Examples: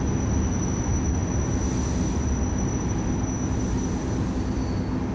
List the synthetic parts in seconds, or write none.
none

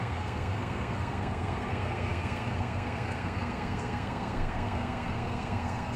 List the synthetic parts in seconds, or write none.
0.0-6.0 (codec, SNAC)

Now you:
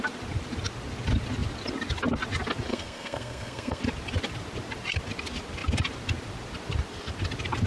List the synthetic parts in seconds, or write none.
2.7-3.8 (codec, SNAC)

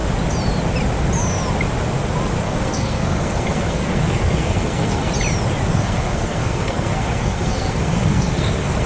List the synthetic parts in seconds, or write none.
2.4-5.1 (codec, SNAC); 5.7-8.9

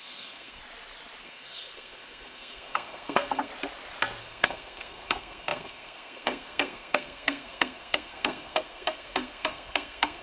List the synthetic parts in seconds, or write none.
0.0-0.6 (codec, SNAC); 1.2-3.5; 4.2-10.2

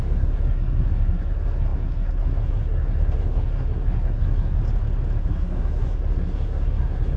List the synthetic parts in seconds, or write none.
0.0-4.6 (codec, SNAC); 5.2-7.2